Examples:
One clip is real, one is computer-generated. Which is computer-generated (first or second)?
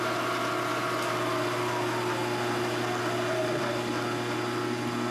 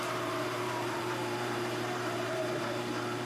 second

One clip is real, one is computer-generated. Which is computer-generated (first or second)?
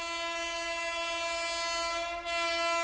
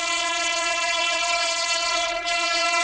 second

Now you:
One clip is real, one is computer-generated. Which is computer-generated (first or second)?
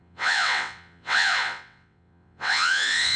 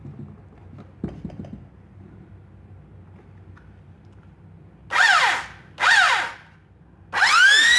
first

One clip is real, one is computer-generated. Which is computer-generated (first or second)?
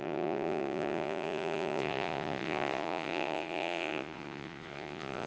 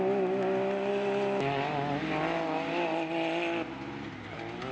first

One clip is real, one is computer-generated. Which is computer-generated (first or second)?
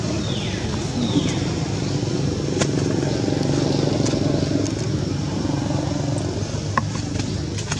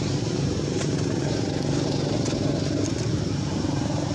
second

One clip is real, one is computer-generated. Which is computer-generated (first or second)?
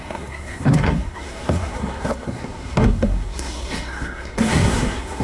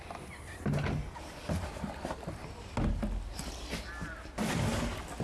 first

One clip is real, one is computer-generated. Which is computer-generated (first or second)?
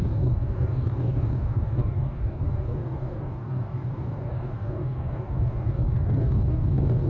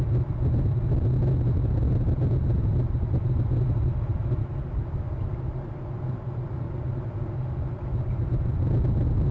first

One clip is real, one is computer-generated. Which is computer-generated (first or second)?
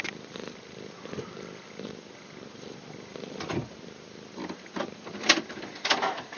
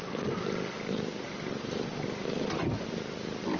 first